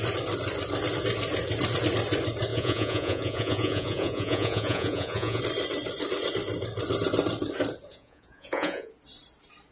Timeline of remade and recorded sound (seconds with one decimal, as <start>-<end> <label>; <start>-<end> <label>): 0.0-2.5 recorded; 2.5-5.4 remade; 5.4-7.9 recorded; 7.9-8.9 remade; 8.9-9.7 recorded